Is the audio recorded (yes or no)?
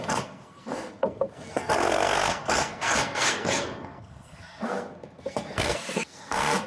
no